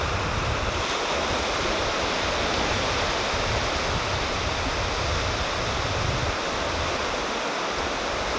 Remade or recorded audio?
recorded